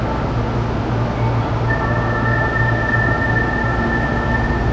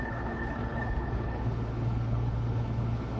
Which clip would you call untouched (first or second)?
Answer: first